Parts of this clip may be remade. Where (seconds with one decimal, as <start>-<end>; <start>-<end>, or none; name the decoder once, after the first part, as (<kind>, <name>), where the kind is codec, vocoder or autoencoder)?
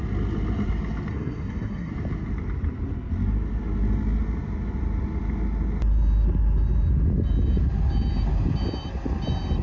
1.1-1.9 (codec, SNAC)